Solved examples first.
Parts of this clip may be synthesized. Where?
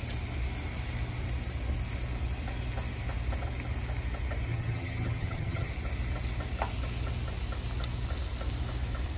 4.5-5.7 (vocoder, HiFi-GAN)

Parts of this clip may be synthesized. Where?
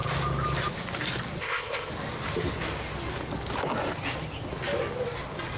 1.4-1.9 (codec, ZipCodec)